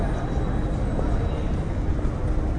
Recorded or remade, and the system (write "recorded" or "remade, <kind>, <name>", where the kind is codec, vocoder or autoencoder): recorded